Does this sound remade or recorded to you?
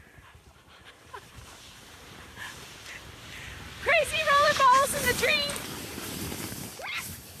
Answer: remade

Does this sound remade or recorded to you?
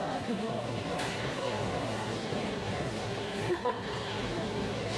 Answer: remade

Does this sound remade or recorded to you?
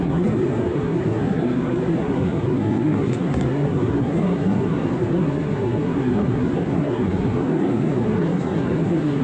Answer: remade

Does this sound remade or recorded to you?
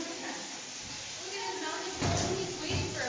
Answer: recorded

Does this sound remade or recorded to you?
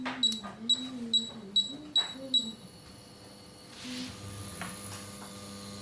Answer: recorded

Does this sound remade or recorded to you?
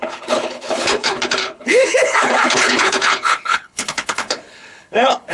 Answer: remade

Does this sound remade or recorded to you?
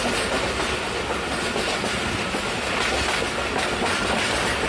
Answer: recorded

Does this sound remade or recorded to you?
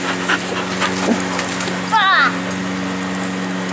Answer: recorded